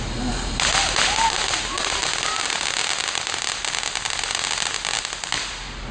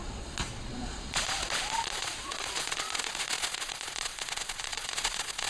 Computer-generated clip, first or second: second